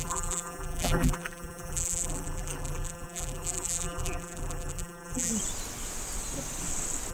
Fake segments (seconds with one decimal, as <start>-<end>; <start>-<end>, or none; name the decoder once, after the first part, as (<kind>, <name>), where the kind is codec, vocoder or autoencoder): 0.0-5.3 (vocoder, BigVGAN v2)